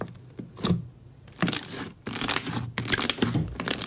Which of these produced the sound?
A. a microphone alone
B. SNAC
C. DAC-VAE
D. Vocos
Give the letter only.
A